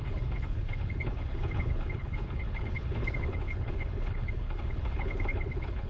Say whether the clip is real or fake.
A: fake